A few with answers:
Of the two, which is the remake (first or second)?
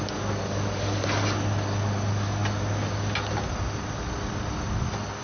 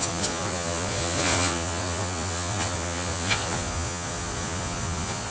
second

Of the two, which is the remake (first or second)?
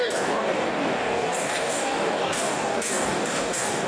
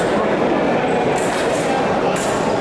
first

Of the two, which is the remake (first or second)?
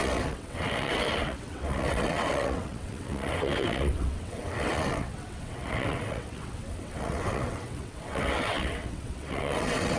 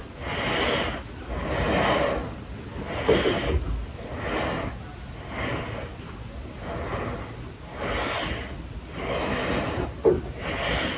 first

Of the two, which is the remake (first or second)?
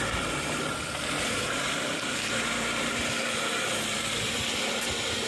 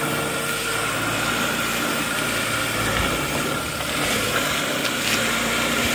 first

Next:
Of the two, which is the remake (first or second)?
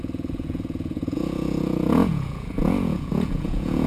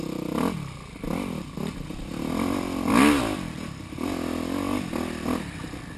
first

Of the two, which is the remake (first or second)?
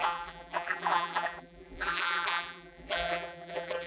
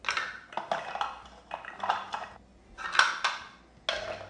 first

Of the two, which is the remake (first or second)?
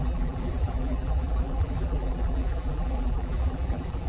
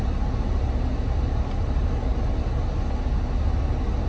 first